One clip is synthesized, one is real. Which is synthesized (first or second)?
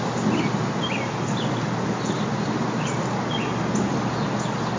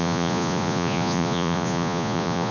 second